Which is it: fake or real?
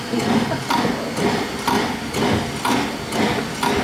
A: real